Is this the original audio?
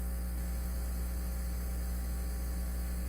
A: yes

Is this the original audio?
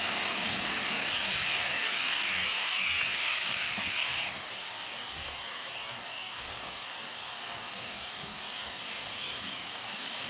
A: no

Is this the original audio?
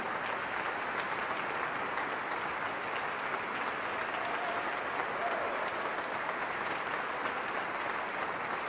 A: yes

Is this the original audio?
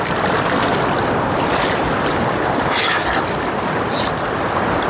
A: yes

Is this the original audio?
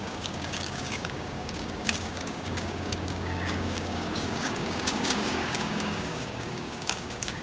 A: no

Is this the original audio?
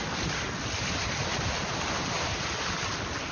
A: yes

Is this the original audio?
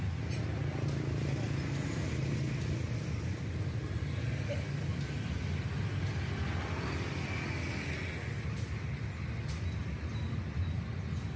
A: yes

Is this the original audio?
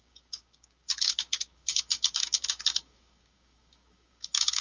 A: no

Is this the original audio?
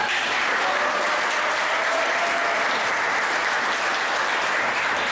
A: yes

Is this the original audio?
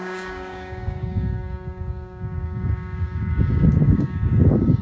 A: no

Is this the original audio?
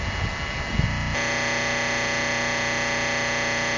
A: yes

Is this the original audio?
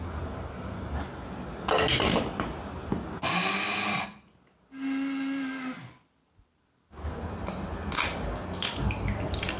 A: yes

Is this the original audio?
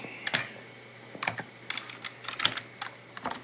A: yes